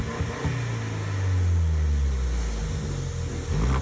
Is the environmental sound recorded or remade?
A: recorded